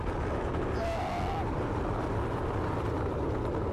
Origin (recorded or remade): recorded